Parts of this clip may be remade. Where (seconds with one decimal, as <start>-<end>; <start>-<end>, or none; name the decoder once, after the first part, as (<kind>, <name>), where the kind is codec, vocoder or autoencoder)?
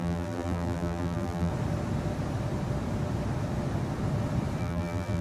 0.0-1.5 (vocoder, BigVGAN v2); 4.6-5.2